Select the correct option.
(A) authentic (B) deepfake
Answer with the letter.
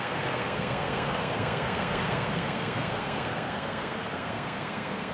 B